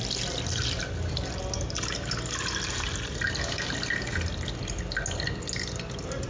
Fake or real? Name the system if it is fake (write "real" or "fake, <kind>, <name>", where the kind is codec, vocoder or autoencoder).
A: real